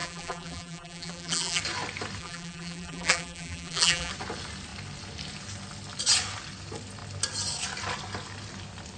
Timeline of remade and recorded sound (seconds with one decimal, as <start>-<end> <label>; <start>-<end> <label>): 0.0-1.6 remade; 1.6-2.2 recorded; 2.2-4.1 remade; 4.1-9.0 recorded